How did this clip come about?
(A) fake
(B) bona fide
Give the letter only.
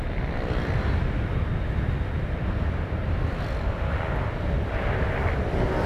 B